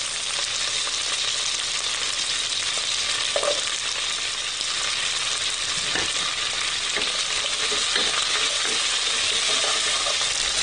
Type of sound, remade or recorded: recorded